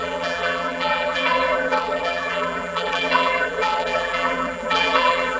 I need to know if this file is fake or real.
fake